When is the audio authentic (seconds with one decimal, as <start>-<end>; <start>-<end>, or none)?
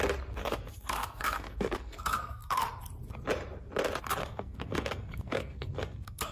0.0-0.4; 2.6-4.2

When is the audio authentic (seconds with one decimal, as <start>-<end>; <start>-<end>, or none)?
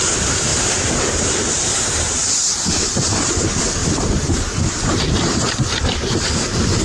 0.0-0.5; 3.3-3.8; 6.3-6.8